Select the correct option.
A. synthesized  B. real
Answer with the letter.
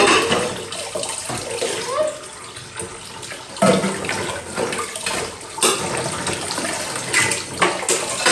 B